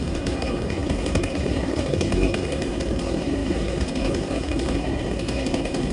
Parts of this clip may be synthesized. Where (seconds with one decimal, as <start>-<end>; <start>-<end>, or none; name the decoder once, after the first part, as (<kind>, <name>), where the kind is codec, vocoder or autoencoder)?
0.0-5.9 (codec, SNAC)